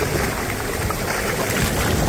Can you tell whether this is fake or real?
real